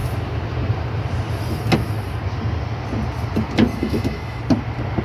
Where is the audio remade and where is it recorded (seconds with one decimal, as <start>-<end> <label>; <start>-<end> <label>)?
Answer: 0.0-3.7 recorded; 3.7-4.4 remade; 4.4-5.0 recorded